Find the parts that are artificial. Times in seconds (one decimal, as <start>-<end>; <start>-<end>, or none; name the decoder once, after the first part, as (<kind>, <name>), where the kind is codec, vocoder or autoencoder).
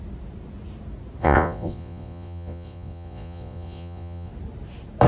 1.2-4.3 (vocoder, Vocos)